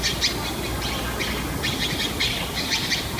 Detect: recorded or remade recorded